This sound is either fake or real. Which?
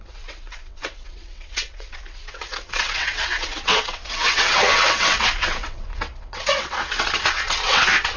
fake